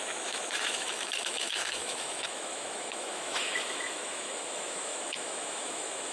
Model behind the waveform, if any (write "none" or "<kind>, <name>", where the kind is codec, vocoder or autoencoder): autoencoder, DAC-VAE